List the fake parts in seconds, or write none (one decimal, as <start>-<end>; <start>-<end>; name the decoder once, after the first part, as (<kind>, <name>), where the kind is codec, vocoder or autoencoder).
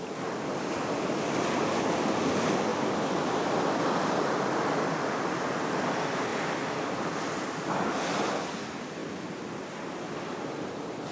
none